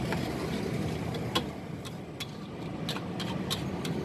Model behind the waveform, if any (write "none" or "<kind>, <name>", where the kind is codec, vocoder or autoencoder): none